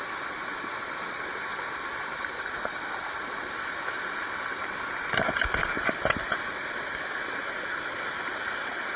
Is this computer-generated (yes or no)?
no